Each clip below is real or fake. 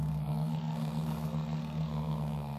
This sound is fake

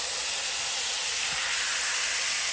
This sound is real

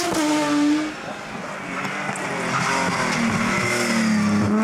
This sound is real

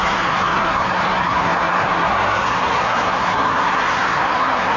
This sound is fake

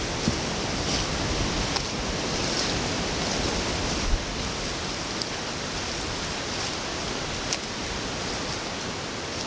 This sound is real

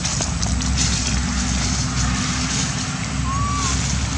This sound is real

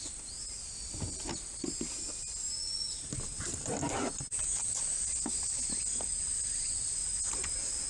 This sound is real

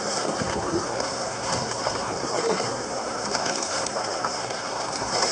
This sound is fake